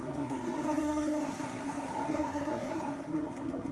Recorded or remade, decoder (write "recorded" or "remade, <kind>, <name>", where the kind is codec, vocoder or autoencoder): remade, codec, SNAC